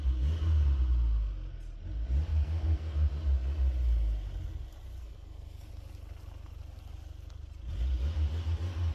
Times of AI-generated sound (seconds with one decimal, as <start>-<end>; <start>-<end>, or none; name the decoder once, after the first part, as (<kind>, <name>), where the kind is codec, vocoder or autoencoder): 2.3-3.1 (codec, SNAC); 5.0-5.7